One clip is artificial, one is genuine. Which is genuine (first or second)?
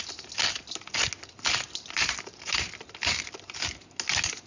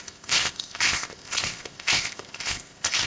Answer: first